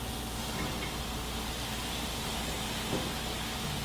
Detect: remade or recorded recorded